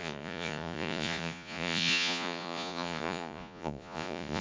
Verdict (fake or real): fake